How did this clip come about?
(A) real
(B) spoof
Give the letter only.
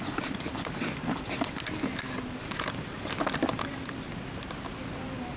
A